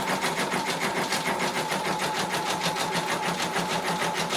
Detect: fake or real real